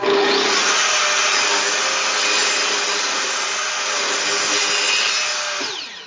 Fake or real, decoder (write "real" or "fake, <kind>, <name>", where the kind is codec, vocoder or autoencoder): real